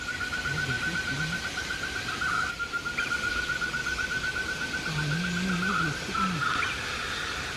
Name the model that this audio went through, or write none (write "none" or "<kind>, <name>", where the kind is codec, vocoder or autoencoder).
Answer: none